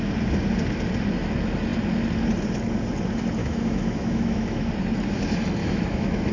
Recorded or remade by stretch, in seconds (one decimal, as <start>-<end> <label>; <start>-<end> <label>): 0.0-3.4 recorded; 3.4-4.7 remade; 4.7-5.6 recorded; 5.6-6.3 remade